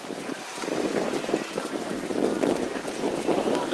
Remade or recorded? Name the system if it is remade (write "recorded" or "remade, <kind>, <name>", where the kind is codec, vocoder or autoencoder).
remade, vocoder, BigVGAN v2